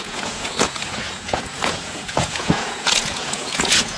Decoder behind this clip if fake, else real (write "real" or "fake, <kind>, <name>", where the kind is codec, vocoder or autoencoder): fake, vocoder, Vocos